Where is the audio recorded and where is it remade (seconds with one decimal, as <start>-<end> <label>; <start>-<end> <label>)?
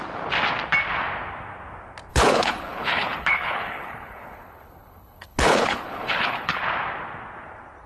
0.0-2.1 recorded; 2.1-6.6 remade; 6.6-7.9 recorded